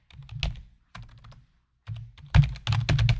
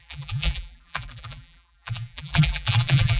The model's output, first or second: second